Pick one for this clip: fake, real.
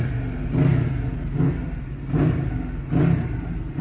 real